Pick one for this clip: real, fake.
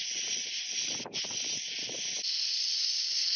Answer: real